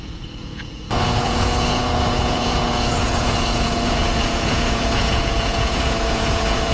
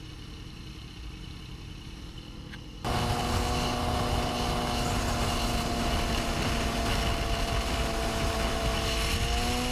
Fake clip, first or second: first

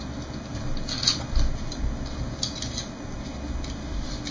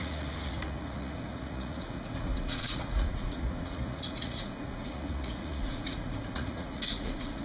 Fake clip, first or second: second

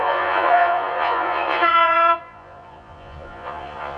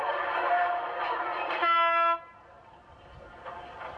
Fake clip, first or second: first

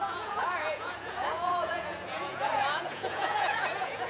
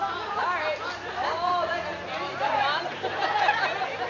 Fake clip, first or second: first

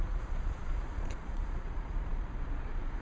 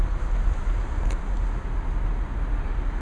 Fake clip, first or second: first